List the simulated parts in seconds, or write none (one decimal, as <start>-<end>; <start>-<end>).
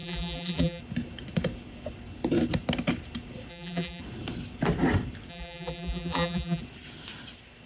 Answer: 0.0-0.8; 3.5-4.0; 5.3-6.6